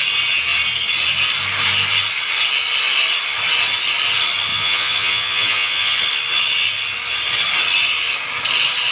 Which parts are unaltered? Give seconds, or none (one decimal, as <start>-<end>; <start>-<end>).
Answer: 0.0-4.5; 6.0-8.9